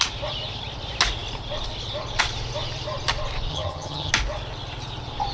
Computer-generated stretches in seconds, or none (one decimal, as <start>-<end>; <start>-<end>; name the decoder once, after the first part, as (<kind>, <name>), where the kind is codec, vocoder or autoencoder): 3.5-4.1 (vocoder, HiFi-GAN)